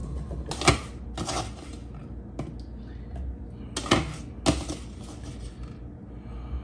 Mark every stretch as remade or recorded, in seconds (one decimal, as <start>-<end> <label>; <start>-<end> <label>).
0.0-6.6 recorded